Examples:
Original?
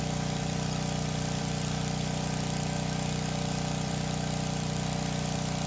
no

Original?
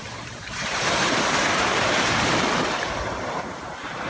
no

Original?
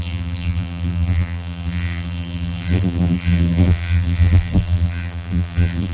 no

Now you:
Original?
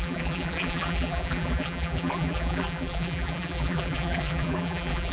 no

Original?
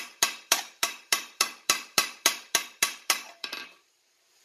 no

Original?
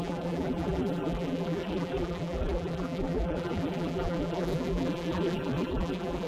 no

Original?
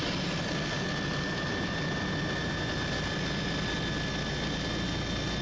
yes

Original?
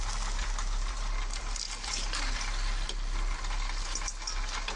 yes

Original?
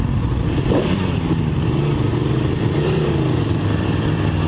no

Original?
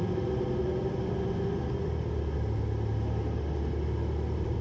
yes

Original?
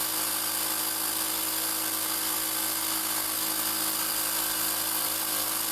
yes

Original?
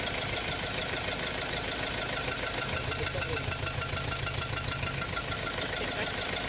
yes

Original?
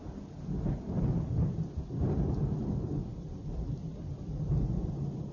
no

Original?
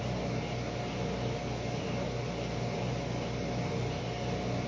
yes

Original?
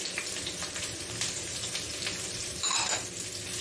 no